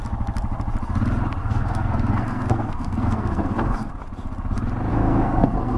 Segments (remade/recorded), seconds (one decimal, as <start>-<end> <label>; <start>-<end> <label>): 0.0-1.4 recorded; 1.4-3.9 remade; 3.9-4.9 recorded; 4.9-5.8 remade